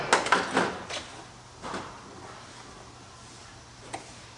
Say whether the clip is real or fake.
real